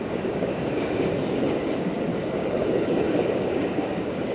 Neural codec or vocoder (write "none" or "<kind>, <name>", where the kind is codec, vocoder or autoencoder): codec, DAC